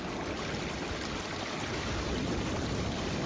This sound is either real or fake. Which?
real